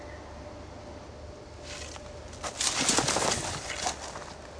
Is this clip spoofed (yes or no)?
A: no